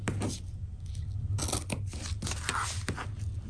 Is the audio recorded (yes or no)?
yes